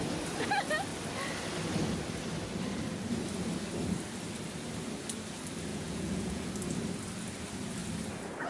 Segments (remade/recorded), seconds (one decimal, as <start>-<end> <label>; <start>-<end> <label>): 0.0-5.7 recorded; 5.7-6.5 remade; 6.5-8.5 recorded